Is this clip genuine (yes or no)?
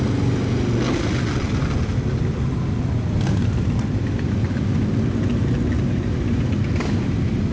yes